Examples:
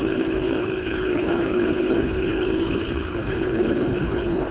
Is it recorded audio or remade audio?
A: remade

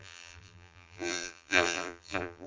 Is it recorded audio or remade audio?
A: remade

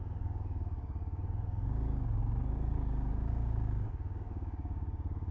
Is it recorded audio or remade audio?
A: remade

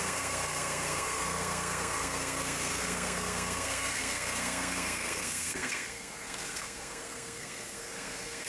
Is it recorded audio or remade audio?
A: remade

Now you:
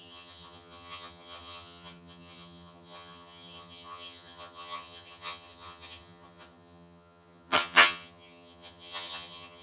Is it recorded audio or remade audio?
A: remade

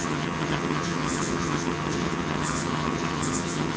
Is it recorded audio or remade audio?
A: remade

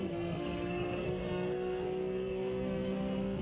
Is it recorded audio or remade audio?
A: remade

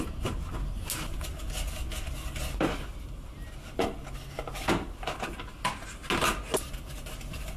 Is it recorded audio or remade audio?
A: recorded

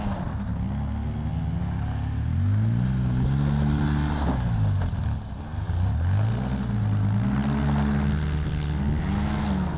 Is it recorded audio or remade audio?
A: recorded